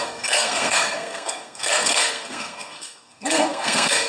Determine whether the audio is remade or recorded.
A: remade